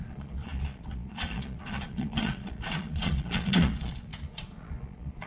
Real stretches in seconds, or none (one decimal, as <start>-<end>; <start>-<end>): none